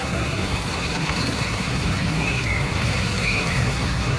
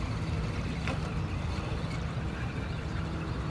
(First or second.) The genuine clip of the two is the second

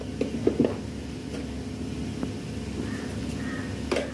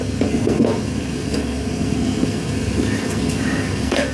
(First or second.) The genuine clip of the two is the first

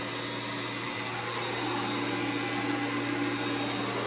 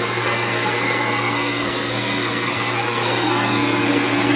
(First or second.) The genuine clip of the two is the first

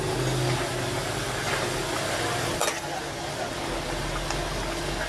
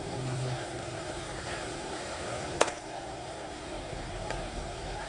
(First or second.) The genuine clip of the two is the first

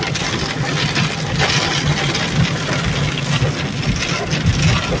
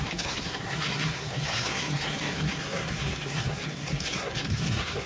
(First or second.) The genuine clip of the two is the first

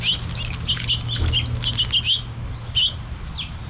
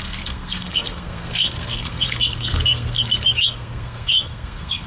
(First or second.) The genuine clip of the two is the first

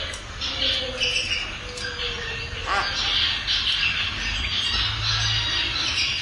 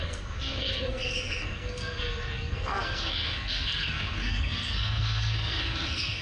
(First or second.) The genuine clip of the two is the first